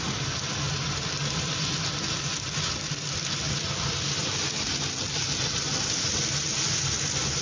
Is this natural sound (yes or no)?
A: yes